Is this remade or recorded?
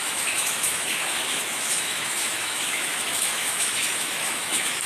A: remade